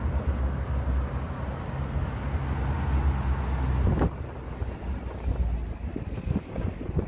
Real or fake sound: real